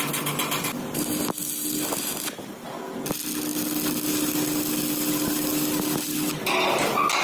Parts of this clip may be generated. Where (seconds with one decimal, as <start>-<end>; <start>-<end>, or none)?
none